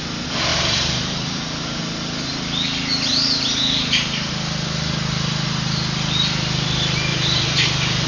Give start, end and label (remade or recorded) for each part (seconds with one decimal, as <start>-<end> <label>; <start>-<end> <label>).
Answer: 0.0-0.5 recorded; 0.5-1.8 remade; 1.8-3.1 recorded; 3.1-4.3 remade; 4.3-7.1 recorded; 7.1-8.1 remade